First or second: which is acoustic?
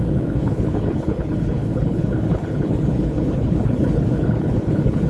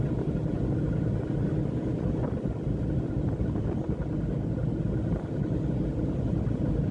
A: second